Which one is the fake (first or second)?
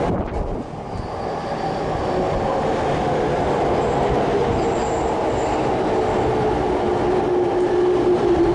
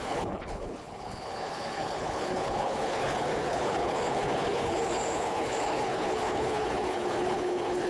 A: second